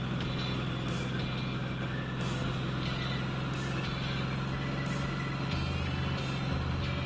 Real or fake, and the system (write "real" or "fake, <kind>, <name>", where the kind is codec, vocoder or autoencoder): real